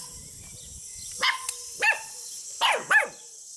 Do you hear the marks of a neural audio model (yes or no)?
no